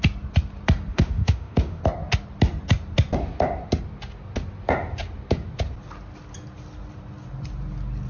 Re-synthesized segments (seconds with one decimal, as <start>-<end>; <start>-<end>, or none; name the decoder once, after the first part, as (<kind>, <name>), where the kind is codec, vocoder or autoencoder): 0.9-1.8 (autoencoder, DAC-VAE)

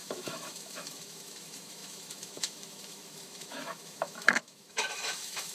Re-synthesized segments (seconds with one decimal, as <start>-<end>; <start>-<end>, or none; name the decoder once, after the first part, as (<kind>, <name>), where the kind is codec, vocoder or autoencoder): 0.0-5.5 (autoencoder, DAC-VAE)

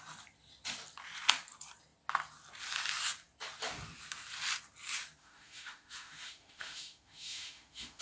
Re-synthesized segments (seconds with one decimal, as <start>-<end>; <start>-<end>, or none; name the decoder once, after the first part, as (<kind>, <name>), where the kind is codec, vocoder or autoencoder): 5.2-8.0 (autoencoder, DAC-VAE)